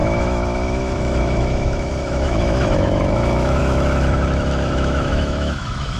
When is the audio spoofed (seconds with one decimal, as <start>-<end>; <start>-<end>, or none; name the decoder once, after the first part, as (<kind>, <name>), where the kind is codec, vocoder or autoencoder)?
0.0-6.0 (autoencoder, DAC-VAE)